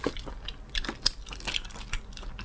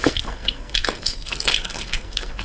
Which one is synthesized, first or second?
second